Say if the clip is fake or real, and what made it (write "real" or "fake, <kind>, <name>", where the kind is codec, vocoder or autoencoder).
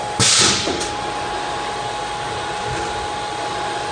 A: real